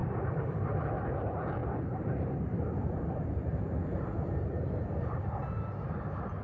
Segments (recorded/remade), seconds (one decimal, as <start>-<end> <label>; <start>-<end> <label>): 0.0-1.1 remade; 1.1-1.6 recorded; 1.6-4.7 remade; 4.7-6.4 recorded